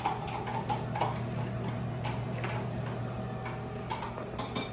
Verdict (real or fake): real